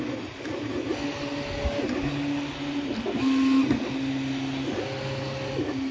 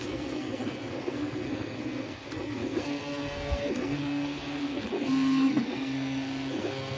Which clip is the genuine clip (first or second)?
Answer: first